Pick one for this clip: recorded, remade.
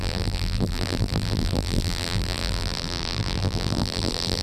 remade